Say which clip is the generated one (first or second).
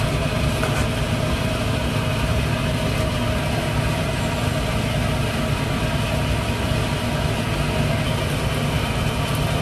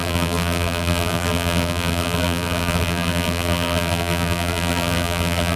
second